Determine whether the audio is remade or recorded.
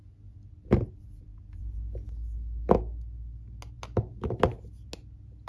recorded